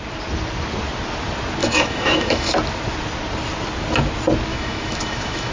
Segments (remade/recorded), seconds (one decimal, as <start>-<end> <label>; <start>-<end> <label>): 0.0-1.6 recorded; 1.6-2.5 remade; 2.5-4.5 recorded; 4.5-5.5 remade